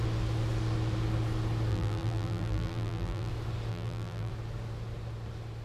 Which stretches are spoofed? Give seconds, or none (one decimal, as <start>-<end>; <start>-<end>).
1.7-3.3; 3.7-4.3